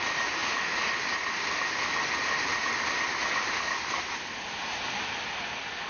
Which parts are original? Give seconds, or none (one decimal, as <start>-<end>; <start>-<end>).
0.0-5.9

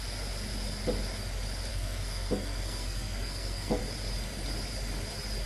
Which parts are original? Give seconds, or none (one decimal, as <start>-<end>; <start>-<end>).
0.0-1.7; 3.8-5.5